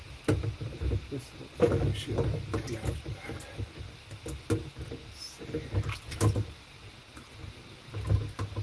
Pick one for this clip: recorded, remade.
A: recorded